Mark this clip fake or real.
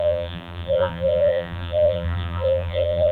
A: fake